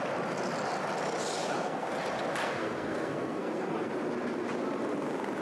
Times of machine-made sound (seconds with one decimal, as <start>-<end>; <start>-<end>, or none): 1.4-1.9; 2.4-3.9